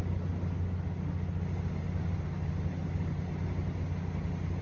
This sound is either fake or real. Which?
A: real